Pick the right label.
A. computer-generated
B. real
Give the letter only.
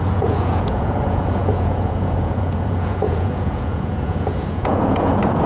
A